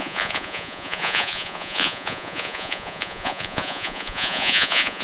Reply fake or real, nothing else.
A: fake